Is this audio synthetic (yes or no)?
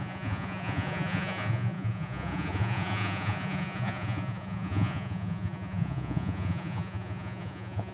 yes